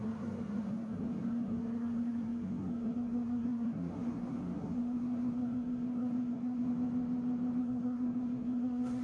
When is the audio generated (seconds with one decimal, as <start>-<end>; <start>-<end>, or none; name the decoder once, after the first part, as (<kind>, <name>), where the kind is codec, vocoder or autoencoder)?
0.0-6.7 (codec, SNAC); 7.6-9.0